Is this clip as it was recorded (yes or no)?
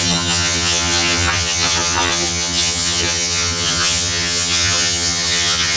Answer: no